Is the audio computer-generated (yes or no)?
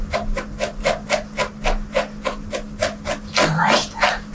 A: no